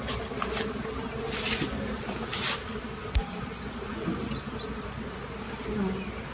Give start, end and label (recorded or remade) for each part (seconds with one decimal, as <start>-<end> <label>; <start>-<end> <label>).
0.0-6.3 recorded